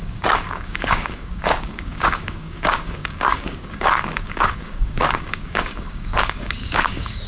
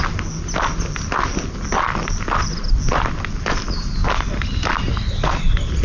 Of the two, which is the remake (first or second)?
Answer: first